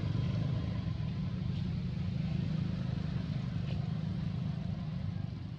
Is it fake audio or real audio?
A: real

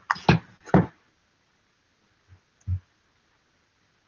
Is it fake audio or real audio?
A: real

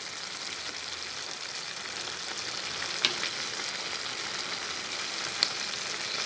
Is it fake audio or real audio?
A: real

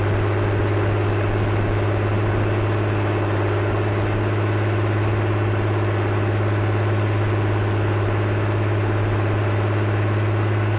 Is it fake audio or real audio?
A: real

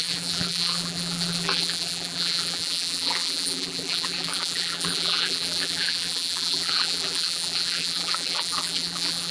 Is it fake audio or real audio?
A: fake